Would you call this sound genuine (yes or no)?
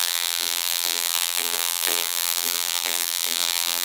no